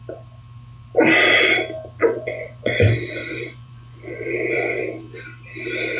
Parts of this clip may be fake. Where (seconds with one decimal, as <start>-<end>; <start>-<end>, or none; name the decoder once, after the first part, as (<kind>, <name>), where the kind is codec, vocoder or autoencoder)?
2.0-4.8 (vocoder, Vocos)